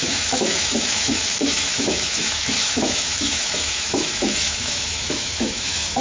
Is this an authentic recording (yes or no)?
no